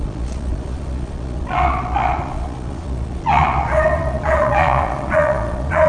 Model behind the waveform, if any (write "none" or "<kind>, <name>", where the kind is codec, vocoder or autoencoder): vocoder, Vocos